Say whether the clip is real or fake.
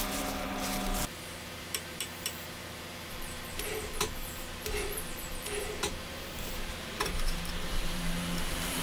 fake